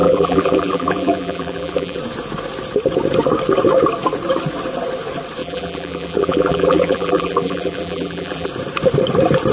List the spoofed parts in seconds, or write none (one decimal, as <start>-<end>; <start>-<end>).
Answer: 0.0-2.0; 5.4-8.5